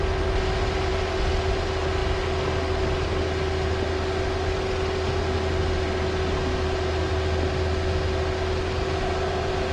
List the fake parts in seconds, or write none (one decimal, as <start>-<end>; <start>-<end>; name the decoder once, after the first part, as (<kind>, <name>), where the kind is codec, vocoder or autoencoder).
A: none